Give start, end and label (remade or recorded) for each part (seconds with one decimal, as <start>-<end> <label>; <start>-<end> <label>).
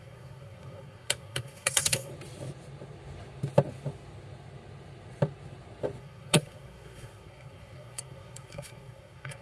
0.0-2.1 remade; 2.1-6.0 recorded; 6.0-9.4 remade